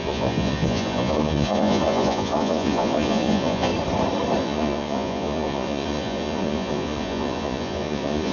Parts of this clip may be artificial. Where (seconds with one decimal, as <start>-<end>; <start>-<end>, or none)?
0.0-3.7; 4.4-8.3